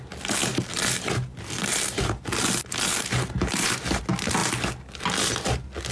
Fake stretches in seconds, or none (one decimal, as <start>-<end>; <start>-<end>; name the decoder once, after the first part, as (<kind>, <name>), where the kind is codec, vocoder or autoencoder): none